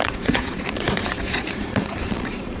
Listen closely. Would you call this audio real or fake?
fake